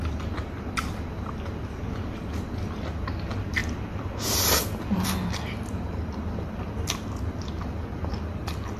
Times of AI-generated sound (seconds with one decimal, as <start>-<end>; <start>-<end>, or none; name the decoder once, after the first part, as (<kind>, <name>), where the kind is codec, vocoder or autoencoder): none